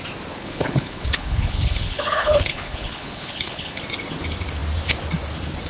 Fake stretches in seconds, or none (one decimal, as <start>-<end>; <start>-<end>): 0.4-3.8